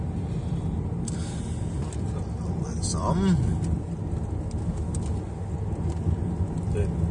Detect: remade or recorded recorded